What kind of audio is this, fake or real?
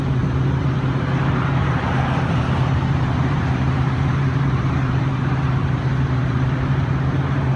fake